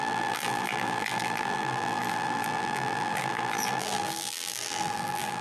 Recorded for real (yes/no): no